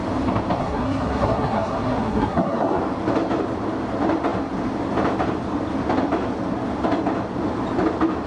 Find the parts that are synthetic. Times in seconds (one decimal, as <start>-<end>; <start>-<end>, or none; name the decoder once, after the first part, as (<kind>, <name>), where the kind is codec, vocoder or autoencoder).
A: 0.6-2.8 (codec, SNAC)